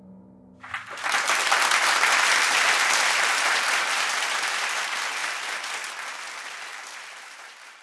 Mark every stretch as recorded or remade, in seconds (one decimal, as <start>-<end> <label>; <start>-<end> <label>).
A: 0.0-7.8 recorded